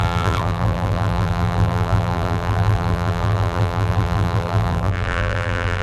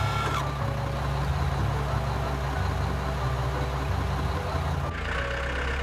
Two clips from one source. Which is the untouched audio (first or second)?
second